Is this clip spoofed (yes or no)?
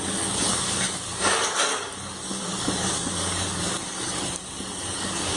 yes